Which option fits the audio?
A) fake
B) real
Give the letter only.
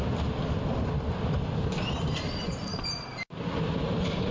B